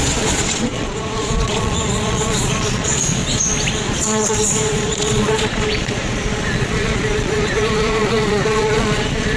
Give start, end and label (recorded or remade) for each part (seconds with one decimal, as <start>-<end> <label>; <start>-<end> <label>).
0.0-3.2 remade; 3.2-3.7 recorded; 3.7-9.4 remade